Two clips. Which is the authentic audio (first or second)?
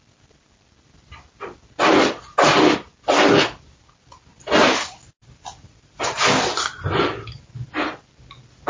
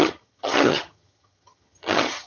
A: first